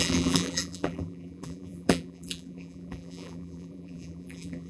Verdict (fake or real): fake